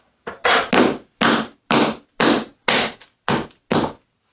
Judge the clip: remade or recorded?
recorded